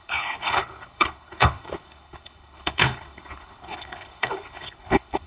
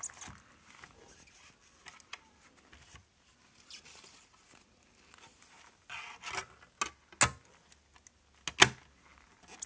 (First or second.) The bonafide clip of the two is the second